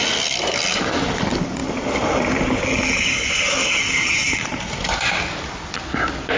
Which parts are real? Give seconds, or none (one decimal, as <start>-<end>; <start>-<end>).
0.0-6.4